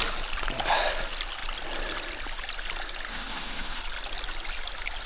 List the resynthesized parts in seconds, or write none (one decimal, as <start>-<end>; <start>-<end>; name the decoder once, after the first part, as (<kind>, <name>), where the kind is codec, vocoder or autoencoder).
3.1-3.8 (autoencoder, DAC-VAE)